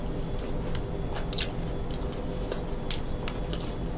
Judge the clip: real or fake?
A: real